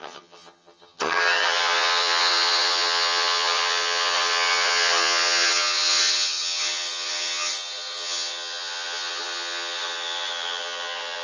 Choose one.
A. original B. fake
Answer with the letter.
B